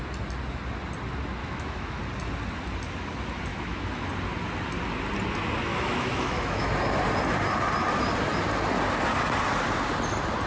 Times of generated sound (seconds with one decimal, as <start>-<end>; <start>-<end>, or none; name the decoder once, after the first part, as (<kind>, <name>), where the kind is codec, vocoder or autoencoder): 1.4-2.0 (autoencoder, DAC-VAE); 3.5-4.1; 5.7-6.7